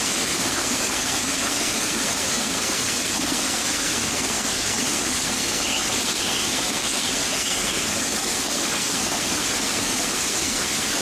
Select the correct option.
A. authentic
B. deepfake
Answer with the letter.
B